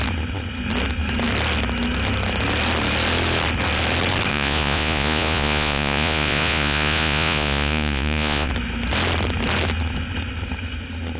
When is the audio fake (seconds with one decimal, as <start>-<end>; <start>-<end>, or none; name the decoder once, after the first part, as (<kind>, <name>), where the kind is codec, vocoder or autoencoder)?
4.3-8.5 (vocoder, Vocos)